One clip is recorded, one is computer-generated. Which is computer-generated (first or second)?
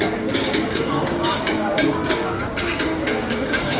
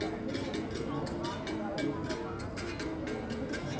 first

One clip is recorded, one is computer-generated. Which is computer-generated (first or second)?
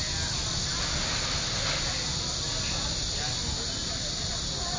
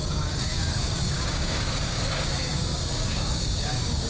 second